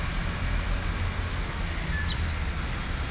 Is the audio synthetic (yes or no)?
no